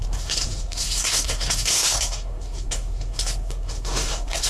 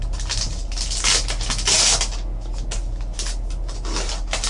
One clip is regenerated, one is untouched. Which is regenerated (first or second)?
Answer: first